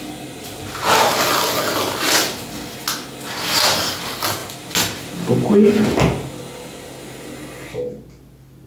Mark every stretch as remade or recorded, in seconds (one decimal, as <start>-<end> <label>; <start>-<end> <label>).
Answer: 0.0-8.7 recorded